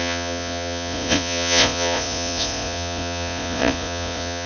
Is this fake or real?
fake